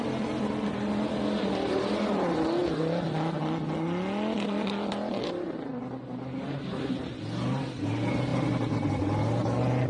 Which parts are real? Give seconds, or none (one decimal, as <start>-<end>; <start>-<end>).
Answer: 0.0-9.9